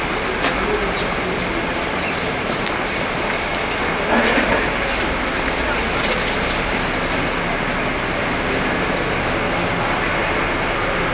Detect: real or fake real